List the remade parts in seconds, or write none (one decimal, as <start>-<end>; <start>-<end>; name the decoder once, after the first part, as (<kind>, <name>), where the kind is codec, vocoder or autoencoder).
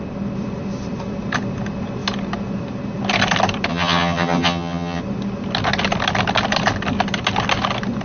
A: 3.7-5.0 (vocoder, HiFi-GAN)